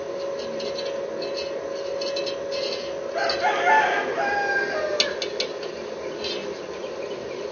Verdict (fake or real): real